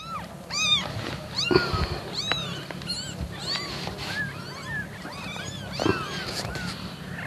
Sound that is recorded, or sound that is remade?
recorded